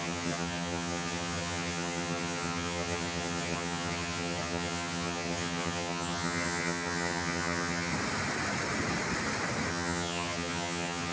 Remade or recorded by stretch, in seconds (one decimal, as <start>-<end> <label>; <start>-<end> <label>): 0.0-7.9 remade; 7.9-9.7 recorded; 9.7-11.1 remade